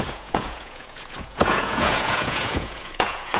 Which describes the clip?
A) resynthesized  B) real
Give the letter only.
A